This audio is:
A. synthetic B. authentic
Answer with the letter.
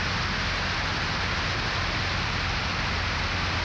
B